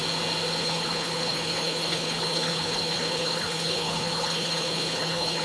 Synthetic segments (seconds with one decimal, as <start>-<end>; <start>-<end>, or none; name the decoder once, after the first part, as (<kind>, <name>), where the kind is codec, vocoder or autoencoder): 0.6-5.4 (codec, HILCodec)